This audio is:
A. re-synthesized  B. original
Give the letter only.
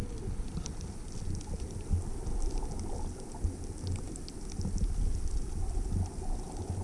B